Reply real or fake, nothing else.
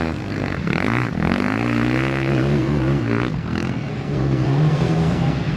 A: fake